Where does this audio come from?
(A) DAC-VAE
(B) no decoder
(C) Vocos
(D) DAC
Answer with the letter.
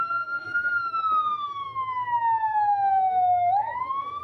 A